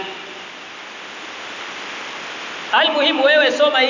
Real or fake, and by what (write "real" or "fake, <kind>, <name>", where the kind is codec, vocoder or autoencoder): real